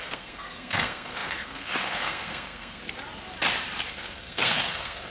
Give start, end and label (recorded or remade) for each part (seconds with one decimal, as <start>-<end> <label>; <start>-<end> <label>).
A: 0.0-2.8 remade; 2.8-3.9 recorded; 3.9-5.1 remade